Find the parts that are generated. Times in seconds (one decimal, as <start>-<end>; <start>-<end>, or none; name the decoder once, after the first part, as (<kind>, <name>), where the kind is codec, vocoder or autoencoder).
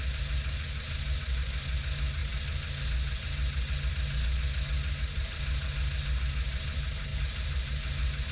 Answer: none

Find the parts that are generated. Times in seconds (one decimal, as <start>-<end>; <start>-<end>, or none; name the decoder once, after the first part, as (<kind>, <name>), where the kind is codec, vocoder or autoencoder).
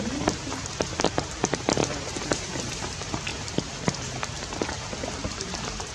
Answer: 0.0-3.3 (vocoder, BigVGAN v2); 4.3-5.9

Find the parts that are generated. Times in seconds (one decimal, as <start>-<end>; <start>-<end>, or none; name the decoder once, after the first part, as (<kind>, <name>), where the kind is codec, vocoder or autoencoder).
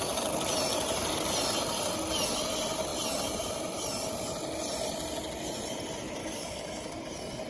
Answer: 6.2-7.0 (codec, DAC)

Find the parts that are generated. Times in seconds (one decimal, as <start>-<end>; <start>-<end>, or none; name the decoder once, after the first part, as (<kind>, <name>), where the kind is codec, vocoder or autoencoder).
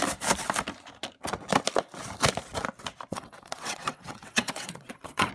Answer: 3.1-5.3 (vocoder, WaveNeXt)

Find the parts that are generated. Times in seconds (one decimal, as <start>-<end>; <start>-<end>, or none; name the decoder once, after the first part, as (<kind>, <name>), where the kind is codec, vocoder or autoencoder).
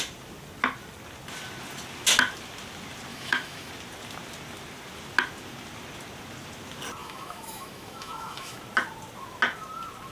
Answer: 3.1-3.7 (autoencoder, DAC-VAE); 7.0-8.6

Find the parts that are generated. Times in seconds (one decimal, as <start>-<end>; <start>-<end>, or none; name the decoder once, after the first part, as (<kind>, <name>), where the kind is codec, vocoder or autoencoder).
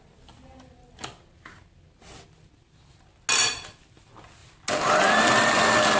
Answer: 3.4-4.0 (vocoder, BigVGAN v2)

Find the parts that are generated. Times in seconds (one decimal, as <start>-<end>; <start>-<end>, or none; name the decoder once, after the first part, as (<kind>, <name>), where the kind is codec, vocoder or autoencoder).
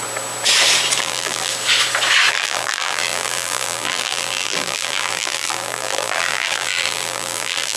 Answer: 1.0-1.5 (vocoder, BigVGAN v2); 2.3-7.8